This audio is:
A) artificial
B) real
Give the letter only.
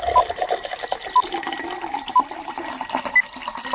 B